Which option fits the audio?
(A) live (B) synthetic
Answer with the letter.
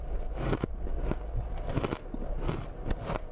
A